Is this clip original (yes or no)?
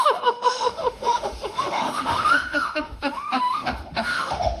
no